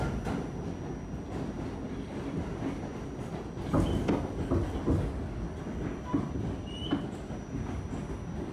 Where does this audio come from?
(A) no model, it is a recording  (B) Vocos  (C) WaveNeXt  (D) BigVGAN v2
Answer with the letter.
A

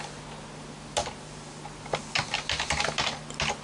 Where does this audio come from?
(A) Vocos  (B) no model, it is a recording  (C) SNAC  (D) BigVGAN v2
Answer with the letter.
B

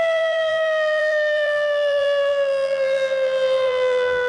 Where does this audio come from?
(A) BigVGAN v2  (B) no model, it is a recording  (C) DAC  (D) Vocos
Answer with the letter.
A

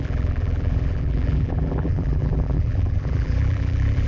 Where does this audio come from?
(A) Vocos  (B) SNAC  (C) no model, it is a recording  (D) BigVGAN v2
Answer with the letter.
D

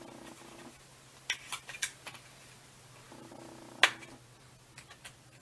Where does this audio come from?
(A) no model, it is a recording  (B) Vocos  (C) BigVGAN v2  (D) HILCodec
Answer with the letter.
A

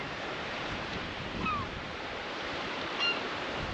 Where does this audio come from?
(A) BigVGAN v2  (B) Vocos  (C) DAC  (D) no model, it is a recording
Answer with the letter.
A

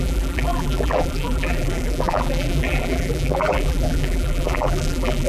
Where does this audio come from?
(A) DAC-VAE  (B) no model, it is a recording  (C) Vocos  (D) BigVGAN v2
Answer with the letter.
D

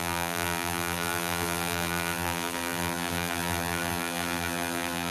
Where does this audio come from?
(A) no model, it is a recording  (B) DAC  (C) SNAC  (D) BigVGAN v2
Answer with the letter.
D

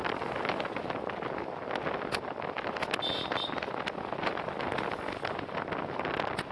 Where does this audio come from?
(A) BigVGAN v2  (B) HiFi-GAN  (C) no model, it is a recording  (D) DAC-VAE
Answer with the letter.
C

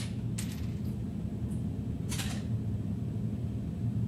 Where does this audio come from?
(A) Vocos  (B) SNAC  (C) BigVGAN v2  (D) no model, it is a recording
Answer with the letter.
D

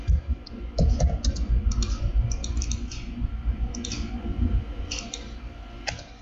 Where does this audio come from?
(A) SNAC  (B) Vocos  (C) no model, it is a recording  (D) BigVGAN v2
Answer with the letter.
C